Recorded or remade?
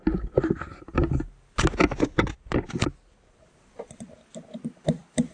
recorded